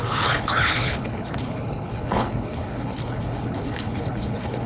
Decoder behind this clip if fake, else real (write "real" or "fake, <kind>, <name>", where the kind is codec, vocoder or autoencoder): fake, codec, HILCodec